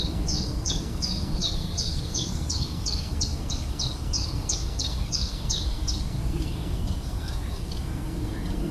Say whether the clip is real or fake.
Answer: fake